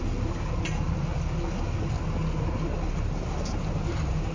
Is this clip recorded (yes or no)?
yes